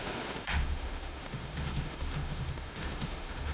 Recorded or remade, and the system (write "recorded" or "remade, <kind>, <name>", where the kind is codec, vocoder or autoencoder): remade, autoencoder, DAC-VAE